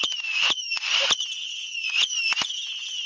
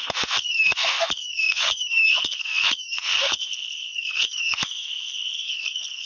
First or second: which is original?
first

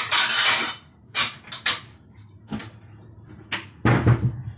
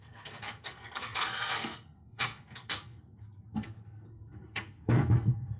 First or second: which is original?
first